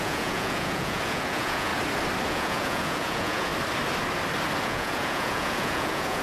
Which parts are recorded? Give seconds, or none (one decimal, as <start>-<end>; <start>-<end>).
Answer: 1.7-2.3; 3.5-4.6